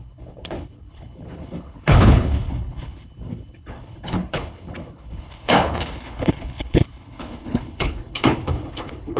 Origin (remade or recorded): remade